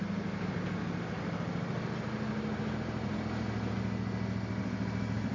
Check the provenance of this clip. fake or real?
real